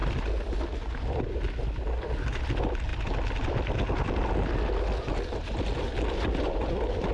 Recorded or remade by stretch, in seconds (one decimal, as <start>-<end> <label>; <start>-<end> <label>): 0.0-7.1 recorded